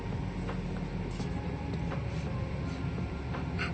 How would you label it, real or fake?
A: real